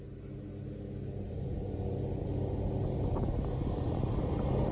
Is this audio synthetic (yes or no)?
no